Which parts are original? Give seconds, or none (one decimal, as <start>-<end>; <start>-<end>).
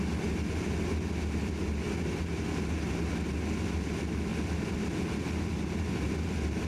0.0-6.7